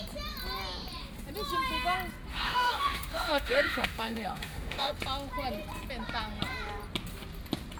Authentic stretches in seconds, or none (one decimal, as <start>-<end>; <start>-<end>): 0.0-2.3; 4.9-7.8